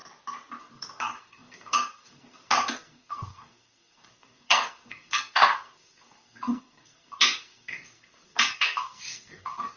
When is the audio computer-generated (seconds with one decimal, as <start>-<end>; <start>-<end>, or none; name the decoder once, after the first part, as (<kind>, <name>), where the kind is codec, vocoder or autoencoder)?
0.6-9.8 (codec, SNAC)